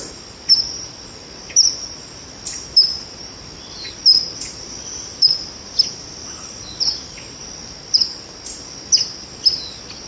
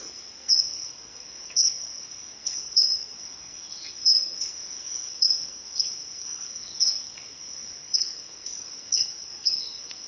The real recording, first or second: first